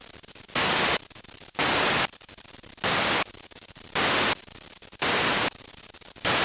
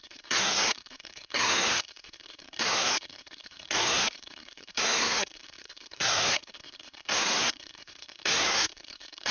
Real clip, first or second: first